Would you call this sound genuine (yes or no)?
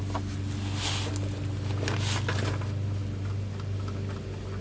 yes